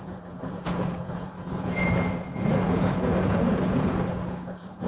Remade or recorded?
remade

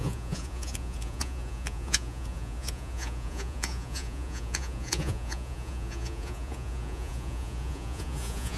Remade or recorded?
remade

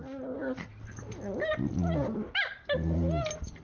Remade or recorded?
recorded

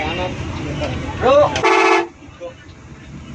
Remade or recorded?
recorded